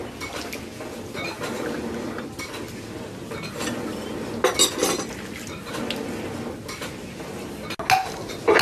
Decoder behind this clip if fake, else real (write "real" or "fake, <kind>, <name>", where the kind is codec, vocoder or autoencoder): real